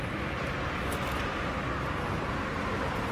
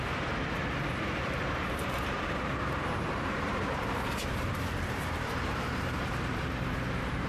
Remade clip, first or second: second